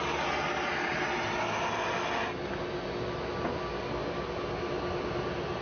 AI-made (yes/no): no